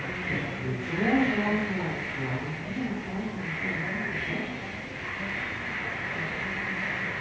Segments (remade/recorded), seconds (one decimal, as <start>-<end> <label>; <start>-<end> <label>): 0.0-7.2 recorded